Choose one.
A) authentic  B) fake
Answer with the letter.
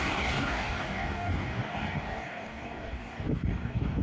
B